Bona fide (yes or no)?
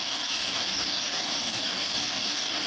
no